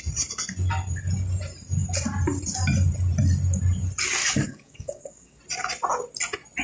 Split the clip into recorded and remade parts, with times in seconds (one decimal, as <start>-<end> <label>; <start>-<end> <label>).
0.0-4.2 recorded; 4.2-5.4 remade; 5.4-6.6 recorded